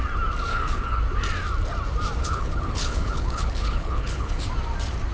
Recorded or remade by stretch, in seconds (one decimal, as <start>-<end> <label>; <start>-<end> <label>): 0.0-0.5 recorded; 0.5-1.0 remade; 1.0-2.2 recorded; 2.2-4.4 remade; 4.4-5.1 recorded